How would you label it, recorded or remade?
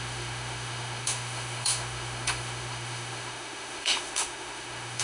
remade